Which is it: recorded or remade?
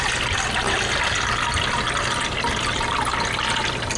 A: recorded